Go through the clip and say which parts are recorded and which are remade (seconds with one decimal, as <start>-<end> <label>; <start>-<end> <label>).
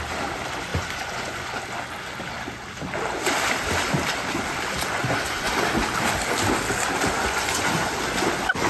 0.0-0.7 recorded; 0.7-1.6 remade; 1.6-4.9 recorded; 4.9-5.5 remade; 5.5-7.2 recorded; 7.2-7.9 remade; 7.9-8.7 recorded